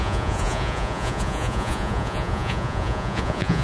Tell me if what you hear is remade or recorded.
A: remade